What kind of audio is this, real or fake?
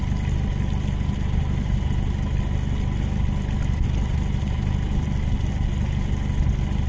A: real